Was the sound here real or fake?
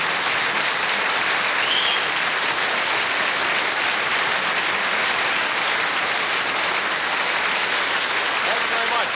real